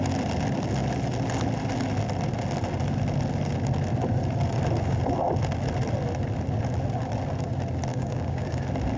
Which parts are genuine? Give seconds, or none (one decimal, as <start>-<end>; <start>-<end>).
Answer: 0.0-7.9; 8.6-9.0